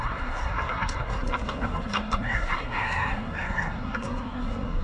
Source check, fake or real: fake